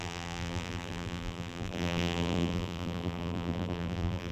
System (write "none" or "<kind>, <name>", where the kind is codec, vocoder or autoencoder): vocoder, BigVGAN v2